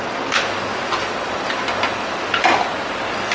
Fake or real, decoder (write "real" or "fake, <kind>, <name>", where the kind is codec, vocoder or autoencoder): real